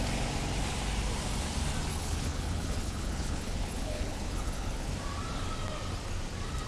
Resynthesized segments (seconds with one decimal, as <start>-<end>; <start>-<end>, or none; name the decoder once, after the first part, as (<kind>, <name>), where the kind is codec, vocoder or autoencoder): 1.9-4.9 (codec, HILCodec)